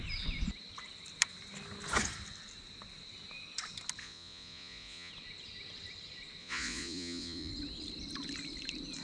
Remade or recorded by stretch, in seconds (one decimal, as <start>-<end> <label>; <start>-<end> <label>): 0.0-4.0 recorded; 4.0-5.1 remade; 5.1-6.4 recorded; 6.4-7.5 remade; 7.5-9.0 recorded